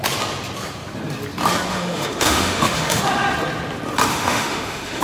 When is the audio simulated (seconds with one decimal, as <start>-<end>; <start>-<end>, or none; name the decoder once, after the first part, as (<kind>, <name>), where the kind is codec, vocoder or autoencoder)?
1.7-3.0 (autoencoder, DAC-VAE); 4.1-5.0